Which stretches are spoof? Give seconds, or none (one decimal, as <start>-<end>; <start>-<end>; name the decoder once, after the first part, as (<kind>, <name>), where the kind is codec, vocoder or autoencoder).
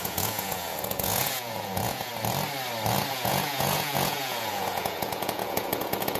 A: 0.0-2.1 (vocoder, Vocos); 3.1-6.2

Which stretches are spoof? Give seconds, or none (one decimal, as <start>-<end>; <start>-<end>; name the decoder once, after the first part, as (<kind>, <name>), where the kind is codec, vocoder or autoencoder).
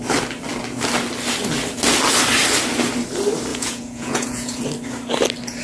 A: 3.5-4.6 (vocoder, Vocos)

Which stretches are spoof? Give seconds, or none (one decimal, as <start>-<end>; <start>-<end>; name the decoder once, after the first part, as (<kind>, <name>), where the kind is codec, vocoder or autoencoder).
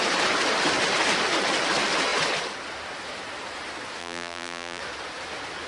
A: 4.0-4.8 (vocoder, BigVGAN v2)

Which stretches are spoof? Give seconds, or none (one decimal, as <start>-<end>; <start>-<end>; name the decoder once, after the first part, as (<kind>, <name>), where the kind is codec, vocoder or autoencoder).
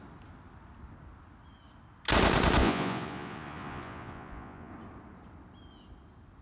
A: 2.6-4.7 (vocoder, Vocos)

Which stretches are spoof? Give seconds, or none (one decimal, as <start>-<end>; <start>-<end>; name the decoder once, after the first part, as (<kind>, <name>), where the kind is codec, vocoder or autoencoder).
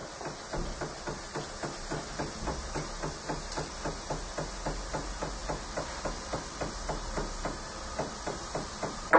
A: none